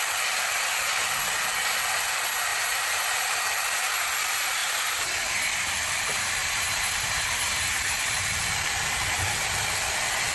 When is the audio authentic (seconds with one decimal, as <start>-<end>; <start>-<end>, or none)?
0.0-2.5; 3.2-4.6; 5.5-6.4; 8.0-10.3